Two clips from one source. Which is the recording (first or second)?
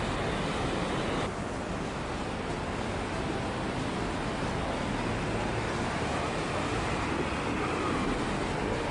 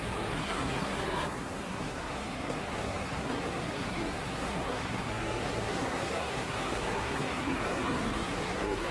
first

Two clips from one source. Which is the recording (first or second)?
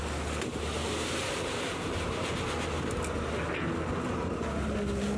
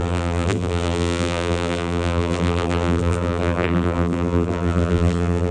first